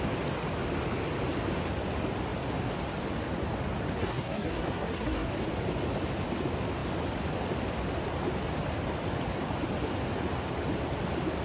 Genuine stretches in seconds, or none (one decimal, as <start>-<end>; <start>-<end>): 0.0-4.0; 5.3-11.4